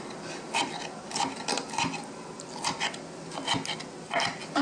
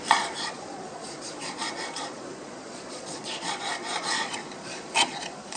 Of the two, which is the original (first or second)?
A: first